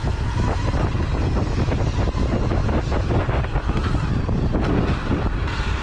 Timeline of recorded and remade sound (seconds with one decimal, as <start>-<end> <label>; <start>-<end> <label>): 0.0-5.8 recorded